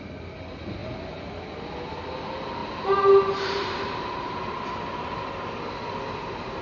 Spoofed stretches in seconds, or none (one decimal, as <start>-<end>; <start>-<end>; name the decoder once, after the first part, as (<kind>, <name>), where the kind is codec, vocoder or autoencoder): 2.6-5.2 (vocoder, BigVGAN v2)